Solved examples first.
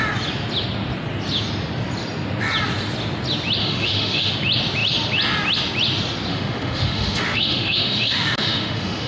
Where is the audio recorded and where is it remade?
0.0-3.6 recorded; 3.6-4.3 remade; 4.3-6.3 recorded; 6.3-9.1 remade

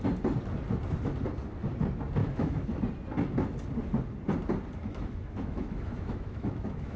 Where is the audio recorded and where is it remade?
0.0-2.2 recorded; 2.2-2.8 remade; 2.8-4.8 recorded; 4.8-7.0 remade

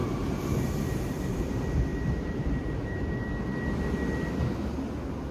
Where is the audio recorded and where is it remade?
0.0-1.5 remade; 1.5-1.9 recorded; 1.9-3.2 remade; 3.2-5.3 recorded

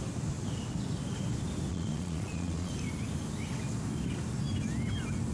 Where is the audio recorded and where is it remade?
0.0-1.7 recorded; 1.7-2.7 remade; 2.7-5.3 recorded

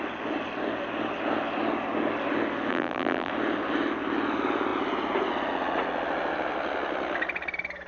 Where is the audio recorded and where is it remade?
0.0-2.7 recorded; 2.7-3.3 remade; 3.3-7.9 recorded

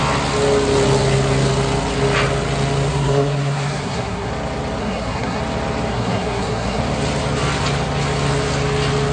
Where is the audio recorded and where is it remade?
0.0-2.9 recorded; 2.9-4.3 remade; 4.3-4.8 recorded; 4.8-5.4 remade; 5.4-5.9 recorded; 5.9-6.8 remade; 6.8-9.1 recorded

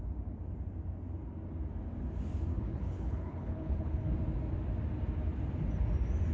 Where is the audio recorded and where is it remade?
0.0-2.5 recorded; 2.5-4.1 remade; 4.1-6.3 recorded